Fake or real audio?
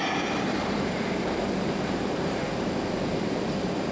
fake